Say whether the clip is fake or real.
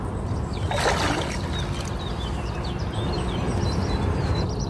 real